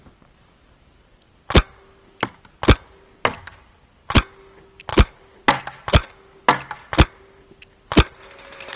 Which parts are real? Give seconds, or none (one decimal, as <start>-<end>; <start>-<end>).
0.0-8.8

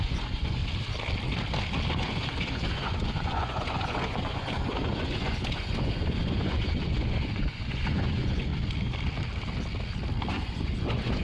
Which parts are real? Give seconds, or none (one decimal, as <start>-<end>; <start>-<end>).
0.6-1.9; 8.5-10.3

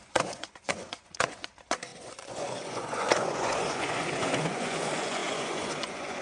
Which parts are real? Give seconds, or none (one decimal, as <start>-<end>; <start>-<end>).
none

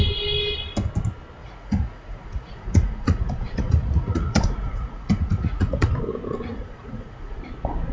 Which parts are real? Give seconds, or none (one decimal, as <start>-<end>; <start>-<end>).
0.0-1.4; 5.9-6.5; 7.4-7.9

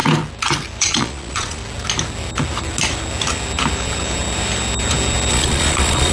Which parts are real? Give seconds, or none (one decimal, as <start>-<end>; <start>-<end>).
0.0-0.8; 1.6-5.3